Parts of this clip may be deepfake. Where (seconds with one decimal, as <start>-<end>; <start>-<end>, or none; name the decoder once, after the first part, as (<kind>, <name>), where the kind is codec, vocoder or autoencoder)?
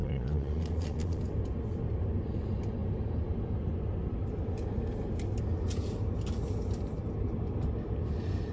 0.0-1.2 (vocoder, Vocos)